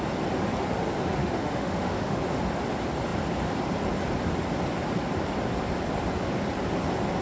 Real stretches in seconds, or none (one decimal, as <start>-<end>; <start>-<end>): 0.0-1.2; 2.2-7.2